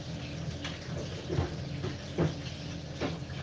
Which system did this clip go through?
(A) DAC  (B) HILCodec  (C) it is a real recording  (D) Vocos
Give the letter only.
C